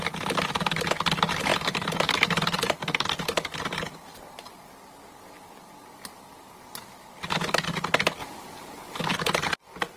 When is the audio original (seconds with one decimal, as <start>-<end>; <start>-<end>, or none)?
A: 0.0-1.5; 3.1-8.2; 9.0-10.0